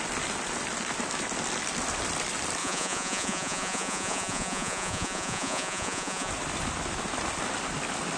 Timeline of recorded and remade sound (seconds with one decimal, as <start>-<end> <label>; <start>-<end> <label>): 0.0-2.6 recorded; 2.6-6.3 remade; 6.3-8.2 recorded